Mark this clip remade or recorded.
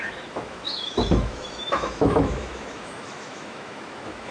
remade